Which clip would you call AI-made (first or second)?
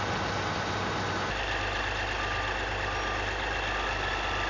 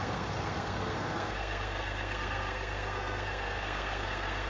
second